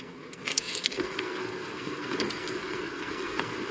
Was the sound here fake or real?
fake